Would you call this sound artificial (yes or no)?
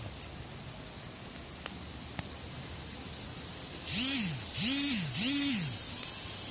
no